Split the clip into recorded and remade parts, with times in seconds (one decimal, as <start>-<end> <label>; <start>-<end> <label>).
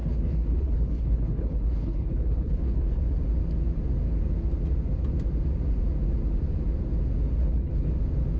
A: 0.0-3.0 remade; 3.0-7.4 recorded; 7.4-7.9 remade; 7.9-8.4 recorded